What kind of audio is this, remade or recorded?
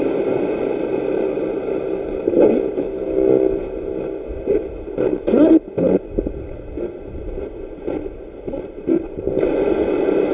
recorded